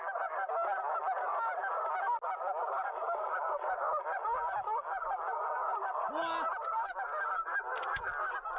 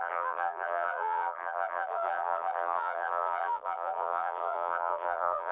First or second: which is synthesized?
second